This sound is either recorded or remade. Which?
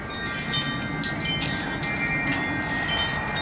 recorded